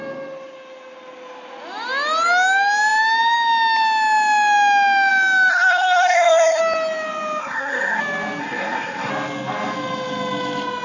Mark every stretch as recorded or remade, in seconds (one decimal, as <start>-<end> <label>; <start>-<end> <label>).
0.0-5.5 recorded; 5.5-6.6 remade; 6.6-7.4 recorded; 7.4-8.0 remade; 8.0-8.4 recorded; 8.4-9.1 remade; 9.1-10.8 recorded